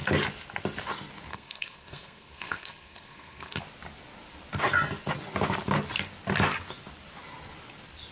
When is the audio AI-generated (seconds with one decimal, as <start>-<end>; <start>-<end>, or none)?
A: 1.3-3.6